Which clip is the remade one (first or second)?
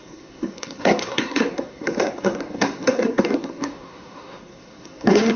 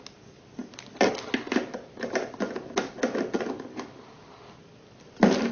first